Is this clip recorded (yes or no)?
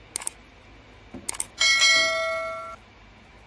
yes